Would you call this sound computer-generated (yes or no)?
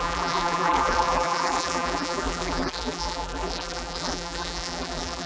yes